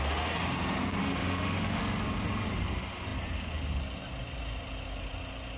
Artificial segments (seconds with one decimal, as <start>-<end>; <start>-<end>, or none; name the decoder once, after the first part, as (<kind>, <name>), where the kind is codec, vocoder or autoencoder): 1.0-1.8 (autoencoder, DAC-VAE)